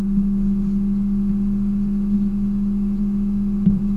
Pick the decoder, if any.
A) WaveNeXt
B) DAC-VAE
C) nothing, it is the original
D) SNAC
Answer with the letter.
C